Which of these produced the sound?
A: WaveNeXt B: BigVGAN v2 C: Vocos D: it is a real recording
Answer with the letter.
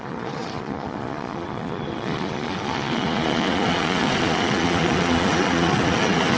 C